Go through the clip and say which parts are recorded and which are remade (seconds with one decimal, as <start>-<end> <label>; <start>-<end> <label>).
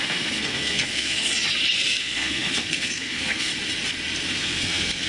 0.0-1.3 remade; 1.3-2.0 recorded; 2.0-3.5 remade; 3.5-4.3 recorded; 4.3-5.1 remade